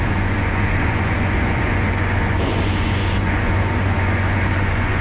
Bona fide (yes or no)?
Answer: no